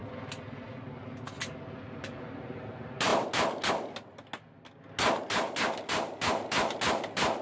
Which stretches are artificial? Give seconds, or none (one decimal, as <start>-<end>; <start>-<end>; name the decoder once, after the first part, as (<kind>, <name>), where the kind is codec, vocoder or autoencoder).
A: none